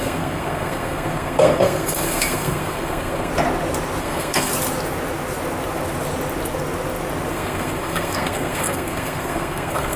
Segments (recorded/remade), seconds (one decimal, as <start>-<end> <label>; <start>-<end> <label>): 0.0-3.3 remade; 3.3-4.0 recorded; 4.0-4.5 remade; 4.5-7.3 recorded; 7.3-10.0 remade